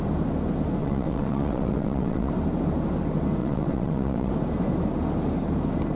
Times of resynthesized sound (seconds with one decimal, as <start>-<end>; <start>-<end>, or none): 0.8-2.3; 3.4-4.3